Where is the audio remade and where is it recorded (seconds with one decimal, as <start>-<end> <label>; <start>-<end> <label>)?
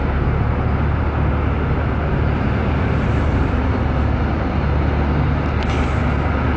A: 0.0-2.1 recorded; 2.1-4.0 remade; 4.0-6.6 recorded